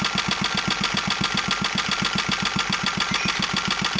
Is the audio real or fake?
real